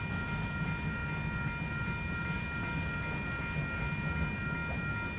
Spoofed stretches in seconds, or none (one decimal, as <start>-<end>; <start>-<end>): none